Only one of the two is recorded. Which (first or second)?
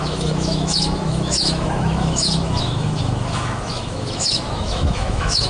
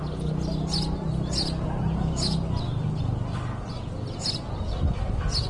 second